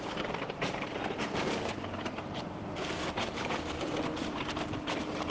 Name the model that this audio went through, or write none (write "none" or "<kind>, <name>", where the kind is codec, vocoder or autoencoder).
vocoder, BigVGAN v2